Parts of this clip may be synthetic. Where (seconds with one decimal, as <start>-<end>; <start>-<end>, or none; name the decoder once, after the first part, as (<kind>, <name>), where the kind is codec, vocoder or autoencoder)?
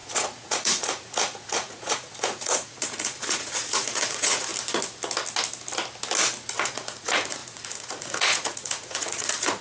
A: 0.0-4.5 (vocoder, Vocos); 6.6-9.6